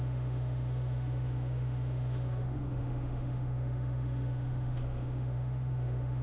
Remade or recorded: remade